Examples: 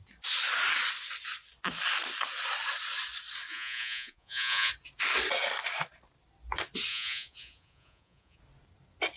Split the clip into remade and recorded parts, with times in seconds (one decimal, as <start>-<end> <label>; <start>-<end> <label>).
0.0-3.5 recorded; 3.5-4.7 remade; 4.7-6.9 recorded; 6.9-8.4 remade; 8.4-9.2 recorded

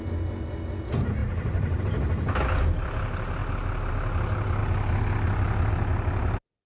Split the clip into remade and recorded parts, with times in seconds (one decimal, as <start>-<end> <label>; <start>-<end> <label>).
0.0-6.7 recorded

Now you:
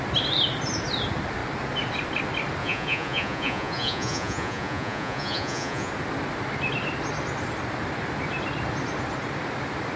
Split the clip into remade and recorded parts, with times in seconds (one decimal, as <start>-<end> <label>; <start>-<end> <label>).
0.0-2.6 recorded; 2.6-5.9 remade; 5.9-10.0 recorded

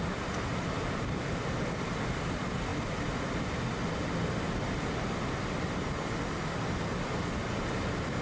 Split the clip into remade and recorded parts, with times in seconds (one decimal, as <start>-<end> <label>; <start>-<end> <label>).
0.0-8.2 recorded

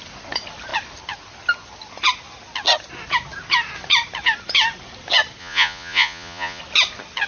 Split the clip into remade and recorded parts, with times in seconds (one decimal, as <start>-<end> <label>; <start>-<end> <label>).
0.0-5.4 recorded; 5.4-6.6 remade; 6.6-7.3 recorded